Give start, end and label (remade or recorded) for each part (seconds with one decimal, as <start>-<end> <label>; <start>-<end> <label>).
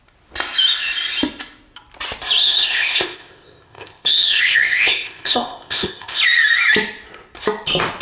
0.0-2.4 recorded; 2.4-6.2 remade; 6.2-8.0 recorded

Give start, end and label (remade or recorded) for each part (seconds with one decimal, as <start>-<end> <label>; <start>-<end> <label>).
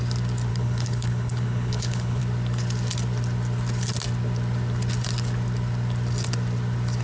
0.0-0.5 recorded; 0.5-2.2 remade; 2.2-7.0 recorded